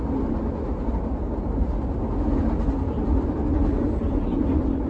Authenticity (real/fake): real